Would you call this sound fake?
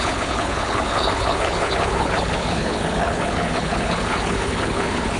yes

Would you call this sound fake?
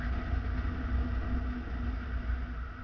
no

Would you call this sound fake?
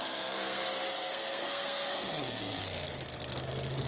yes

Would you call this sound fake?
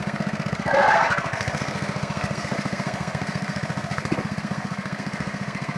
yes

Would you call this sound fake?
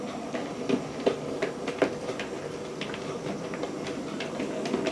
no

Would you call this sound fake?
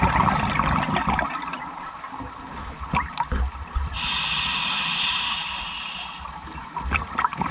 no